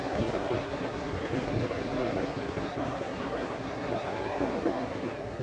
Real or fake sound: fake